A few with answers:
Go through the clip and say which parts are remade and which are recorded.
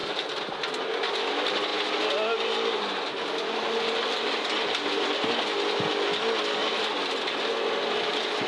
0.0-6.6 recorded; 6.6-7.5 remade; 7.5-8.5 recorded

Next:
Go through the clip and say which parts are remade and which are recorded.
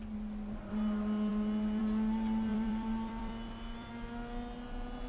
0.0-2.5 recorded; 2.5-3.9 remade; 3.9-5.1 recorded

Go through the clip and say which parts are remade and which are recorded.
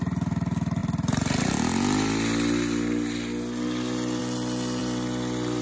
0.0-4.8 recorded; 4.8-5.6 remade